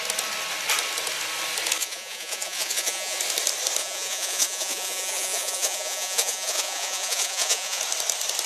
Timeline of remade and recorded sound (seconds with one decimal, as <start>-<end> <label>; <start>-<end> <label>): 0.0-1.8 recorded; 1.8-3.2 remade; 3.2-3.8 recorded; 3.8-7.8 remade; 7.8-8.5 recorded